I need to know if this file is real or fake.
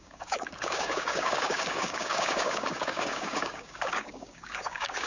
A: fake